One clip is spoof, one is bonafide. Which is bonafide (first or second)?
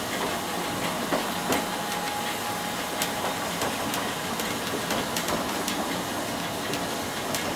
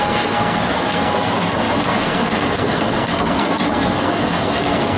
first